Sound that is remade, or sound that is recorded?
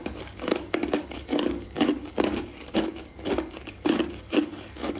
remade